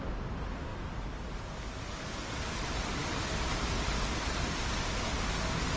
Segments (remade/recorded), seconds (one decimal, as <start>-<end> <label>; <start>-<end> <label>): 0.0-5.8 recorded

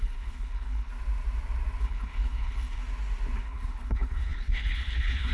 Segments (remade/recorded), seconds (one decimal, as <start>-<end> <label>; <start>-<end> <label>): 0.0-0.9 remade; 0.9-1.8 recorded; 1.8-2.8 remade; 2.8-3.4 recorded; 3.4-5.3 remade

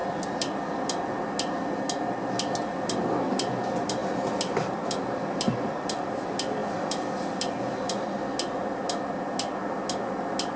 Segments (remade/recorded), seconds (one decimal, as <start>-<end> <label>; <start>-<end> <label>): 0.0-10.6 recorded

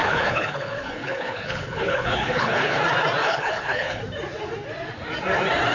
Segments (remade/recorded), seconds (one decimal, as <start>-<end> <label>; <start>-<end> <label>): 0.0-2.8 remade; 2.8-3.2 recorded; 3.2-4.0 remade; 4.0-5.7 recorded

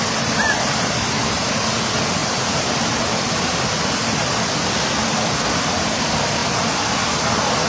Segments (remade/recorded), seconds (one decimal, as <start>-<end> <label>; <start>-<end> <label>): 0.0-7.7 recorded

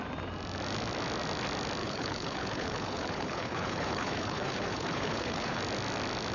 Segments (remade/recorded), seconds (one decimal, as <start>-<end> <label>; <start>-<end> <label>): 0.0-1.8 recorded; 1.8-5.6 remade; 5.6-6.3 recorded

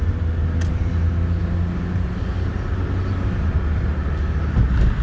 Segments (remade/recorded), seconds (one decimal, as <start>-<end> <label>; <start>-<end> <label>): 0.0-5.0 recorded